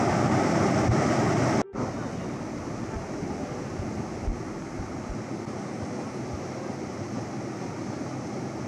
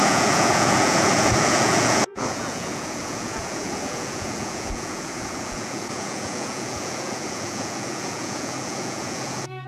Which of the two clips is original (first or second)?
first